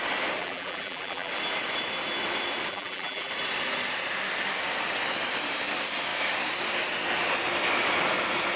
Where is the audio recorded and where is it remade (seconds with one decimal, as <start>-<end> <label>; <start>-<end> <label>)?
0.0-0.4 recorded; 0.4-1.3 remade; 1.3-2.7 recorded; 2.7-3.3 remade; 3.3-8.6 recorded